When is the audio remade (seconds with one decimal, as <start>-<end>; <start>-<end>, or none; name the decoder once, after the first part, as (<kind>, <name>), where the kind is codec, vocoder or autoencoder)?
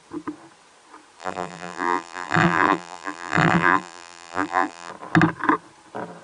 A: 1.2-4.9 (vocoder, BigVGAN v2)